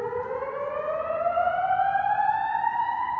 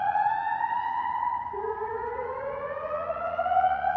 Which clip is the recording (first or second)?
first